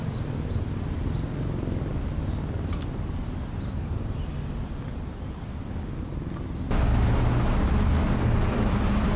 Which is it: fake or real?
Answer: real